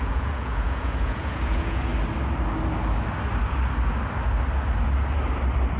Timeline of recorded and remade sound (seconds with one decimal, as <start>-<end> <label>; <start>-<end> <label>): 0.0-1.9 remade; 1.9-5.8 recorded